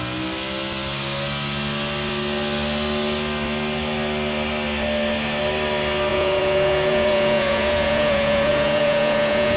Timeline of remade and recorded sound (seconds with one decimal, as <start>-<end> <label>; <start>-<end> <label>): 0.0-6.1 recorded; 6.1-9.6 remade